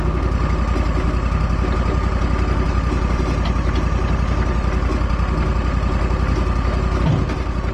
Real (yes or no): yes